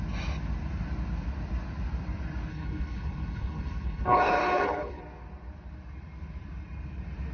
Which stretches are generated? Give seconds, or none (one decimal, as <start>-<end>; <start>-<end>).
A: 2.5-5.0